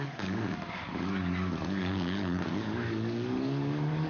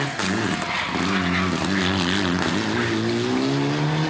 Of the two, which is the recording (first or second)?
second